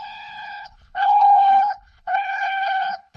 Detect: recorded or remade remade